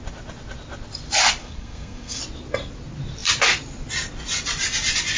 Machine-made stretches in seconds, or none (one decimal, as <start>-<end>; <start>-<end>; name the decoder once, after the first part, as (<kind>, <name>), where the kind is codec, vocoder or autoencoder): 1.4-2.2 (codec, SNAC)